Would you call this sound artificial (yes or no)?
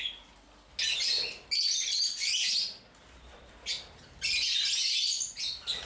no